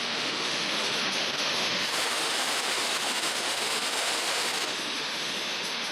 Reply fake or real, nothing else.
fake